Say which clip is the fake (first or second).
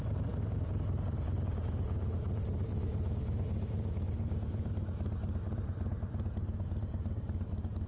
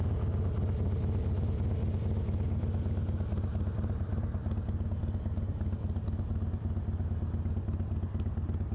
first